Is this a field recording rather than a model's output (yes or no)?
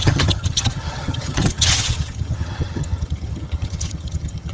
no